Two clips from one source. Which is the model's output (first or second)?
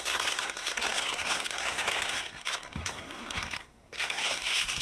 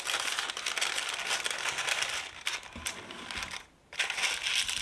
first